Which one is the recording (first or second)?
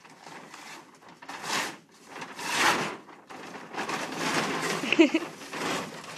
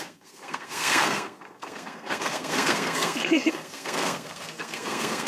first